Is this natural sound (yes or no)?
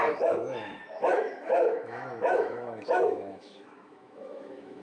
no